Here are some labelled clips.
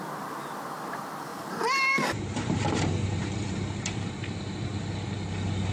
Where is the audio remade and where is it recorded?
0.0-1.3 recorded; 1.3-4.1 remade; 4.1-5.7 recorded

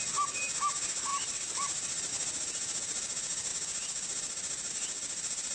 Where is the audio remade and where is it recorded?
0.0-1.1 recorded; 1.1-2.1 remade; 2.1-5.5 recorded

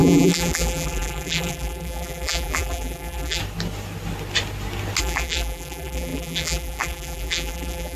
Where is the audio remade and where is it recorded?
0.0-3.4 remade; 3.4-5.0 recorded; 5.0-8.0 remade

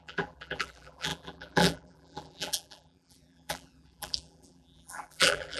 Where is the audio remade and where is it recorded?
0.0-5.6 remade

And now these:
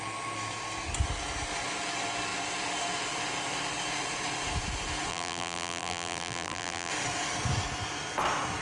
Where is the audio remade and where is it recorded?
0.0-5.1 recorded; 5.1-6.9 remade; 6.9-8.6 recorded

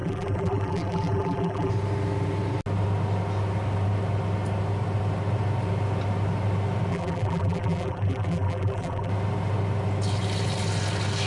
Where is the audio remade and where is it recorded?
0.0-1.7 remade; 1.7-6.9 recorded; 6.9-9.1 remade; 9.1-11.3 recorded